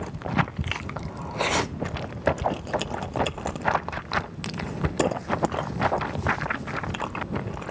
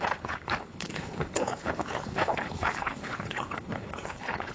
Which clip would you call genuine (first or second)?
first